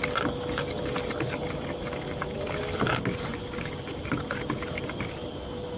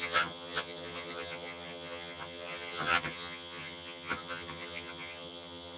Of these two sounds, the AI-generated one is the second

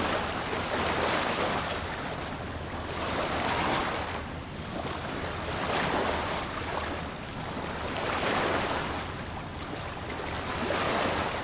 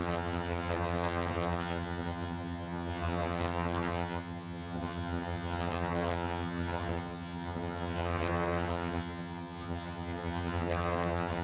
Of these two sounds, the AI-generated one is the second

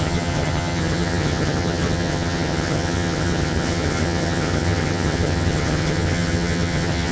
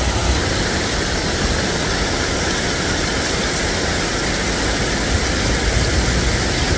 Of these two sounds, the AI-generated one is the first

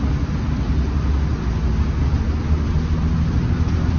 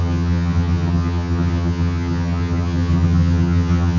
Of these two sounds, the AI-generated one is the second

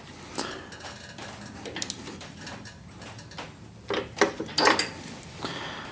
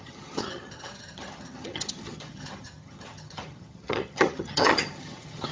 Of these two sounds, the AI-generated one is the second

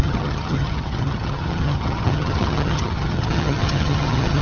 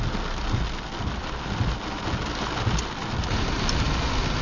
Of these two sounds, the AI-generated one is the first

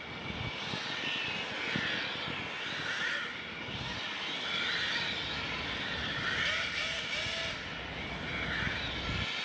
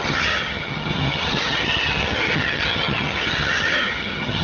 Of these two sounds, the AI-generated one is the second